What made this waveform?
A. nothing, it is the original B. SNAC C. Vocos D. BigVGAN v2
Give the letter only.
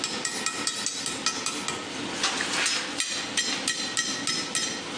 A